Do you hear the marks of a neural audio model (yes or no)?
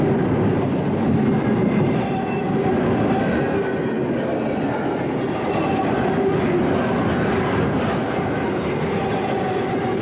no